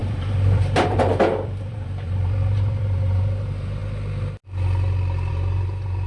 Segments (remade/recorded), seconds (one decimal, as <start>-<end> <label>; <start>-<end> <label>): 0.0-3.8 remade; 3.8-5.3 recorded; 5.3-6.1 remade